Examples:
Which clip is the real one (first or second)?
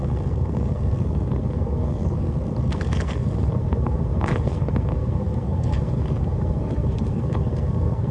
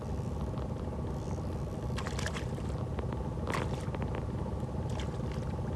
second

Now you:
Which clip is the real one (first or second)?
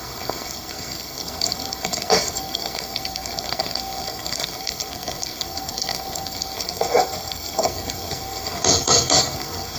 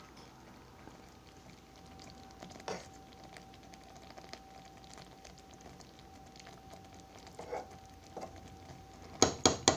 second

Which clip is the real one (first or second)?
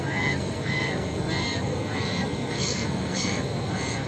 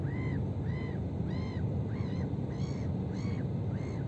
second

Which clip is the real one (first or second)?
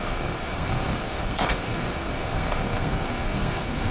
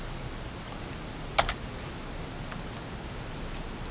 second